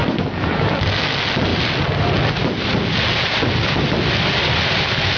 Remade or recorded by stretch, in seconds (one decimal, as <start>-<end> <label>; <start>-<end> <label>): 0.0-5.2 recorded